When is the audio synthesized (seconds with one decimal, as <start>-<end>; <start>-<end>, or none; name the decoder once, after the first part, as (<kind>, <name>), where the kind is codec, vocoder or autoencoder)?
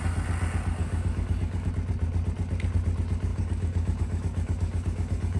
0.8-1.7 (codec, DAC); 3.3-5.4